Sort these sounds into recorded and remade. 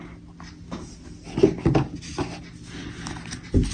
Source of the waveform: recorded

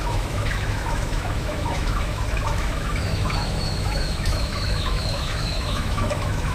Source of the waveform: remade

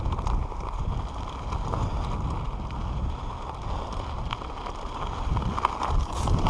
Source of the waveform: recorded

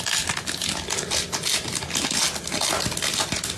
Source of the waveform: recorded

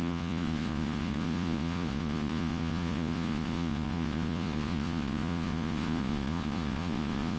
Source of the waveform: remade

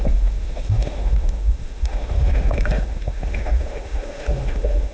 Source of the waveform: remade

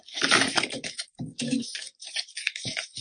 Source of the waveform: remade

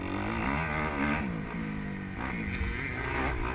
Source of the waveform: recorded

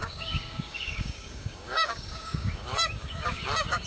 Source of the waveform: remade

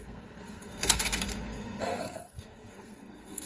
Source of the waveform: remade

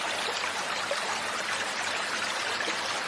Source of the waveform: recorded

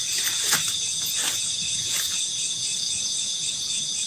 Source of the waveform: remade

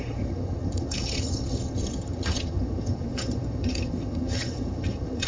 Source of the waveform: remade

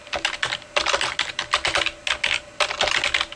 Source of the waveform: recorded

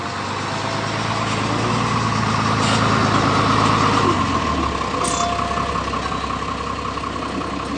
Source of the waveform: recorded